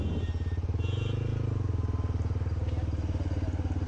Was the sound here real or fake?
real